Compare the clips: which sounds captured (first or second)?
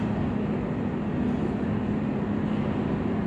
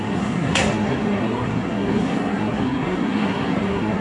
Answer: first